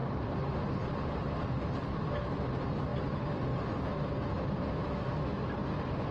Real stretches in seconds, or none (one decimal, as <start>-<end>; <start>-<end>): 0.0-4.8; 5.4-6.1